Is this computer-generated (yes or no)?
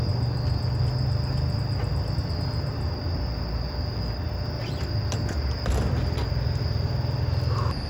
no